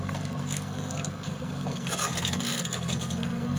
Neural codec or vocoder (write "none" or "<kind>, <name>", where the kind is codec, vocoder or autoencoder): codec, SNAC